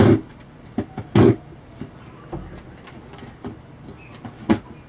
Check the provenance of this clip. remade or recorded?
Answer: recorded